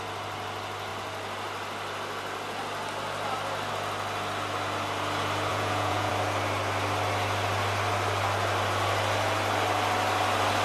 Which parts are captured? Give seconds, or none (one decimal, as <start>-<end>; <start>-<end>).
0.0-5.5; 6.1-10.6